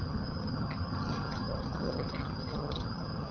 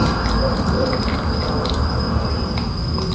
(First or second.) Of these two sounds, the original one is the second